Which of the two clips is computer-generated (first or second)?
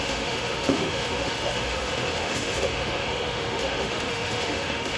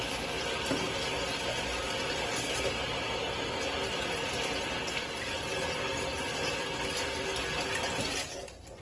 first